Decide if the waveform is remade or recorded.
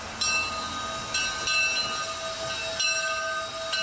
recorded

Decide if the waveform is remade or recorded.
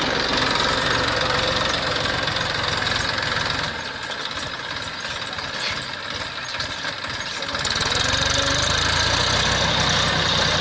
recorded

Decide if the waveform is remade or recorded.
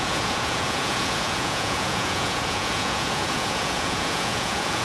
remade